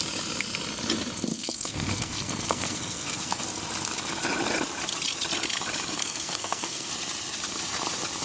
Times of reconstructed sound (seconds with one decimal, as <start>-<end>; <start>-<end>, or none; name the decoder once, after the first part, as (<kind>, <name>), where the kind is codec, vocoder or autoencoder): 1.3-3.4 (codec, SNAC); 6.0-6.9